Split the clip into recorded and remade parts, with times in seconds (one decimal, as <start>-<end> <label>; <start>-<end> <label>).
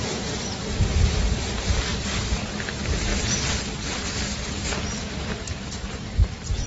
0.0-3.1 remade; 3.1-5.1 recorded; 5.1-6.7 remade